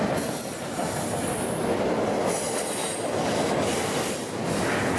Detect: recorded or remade recorded